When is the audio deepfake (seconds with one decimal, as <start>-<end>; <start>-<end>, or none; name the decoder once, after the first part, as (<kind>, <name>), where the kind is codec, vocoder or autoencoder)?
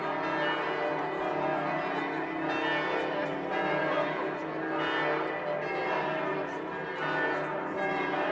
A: none